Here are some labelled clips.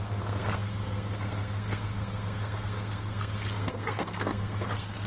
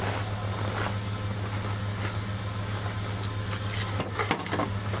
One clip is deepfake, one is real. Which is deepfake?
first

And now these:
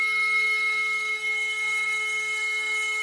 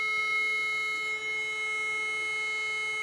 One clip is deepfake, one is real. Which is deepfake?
first